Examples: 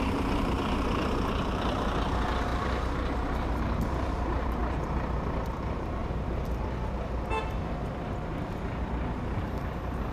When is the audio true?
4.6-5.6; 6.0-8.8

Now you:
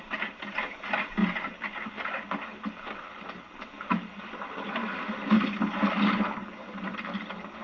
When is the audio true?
0.0-7.6

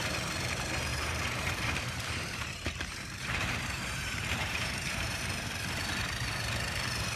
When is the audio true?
0.0-0.9; 5.2-7.2

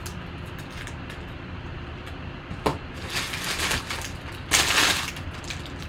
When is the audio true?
0.0-5.9

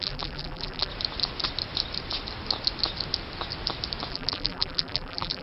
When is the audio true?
0.9-4.1